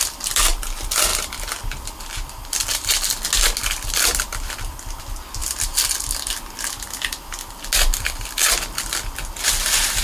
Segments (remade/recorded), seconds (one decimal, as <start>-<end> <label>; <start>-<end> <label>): 0.0-10.0 recorded